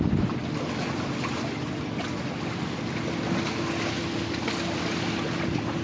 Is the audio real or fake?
real